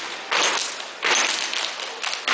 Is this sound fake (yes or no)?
no